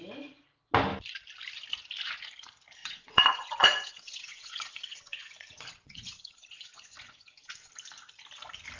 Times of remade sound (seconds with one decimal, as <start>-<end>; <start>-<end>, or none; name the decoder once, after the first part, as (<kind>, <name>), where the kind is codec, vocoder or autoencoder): 2.8-7.7 (vocoder, Vocos)